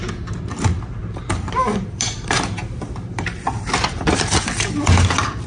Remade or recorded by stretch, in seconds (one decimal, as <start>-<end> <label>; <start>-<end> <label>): 0.0-1.0 recorded; 1.0-4.3 remade; 4.3-5.5 recorded